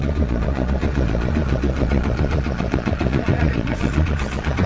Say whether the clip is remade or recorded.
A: remade